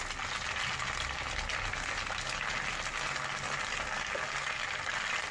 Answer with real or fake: real